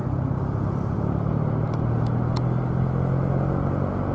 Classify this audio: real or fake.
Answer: real